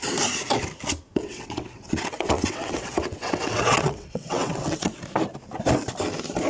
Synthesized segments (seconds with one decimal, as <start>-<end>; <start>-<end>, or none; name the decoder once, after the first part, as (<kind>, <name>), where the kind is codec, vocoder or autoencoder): 1.1-5.0 (vocoder, WaveNeXt)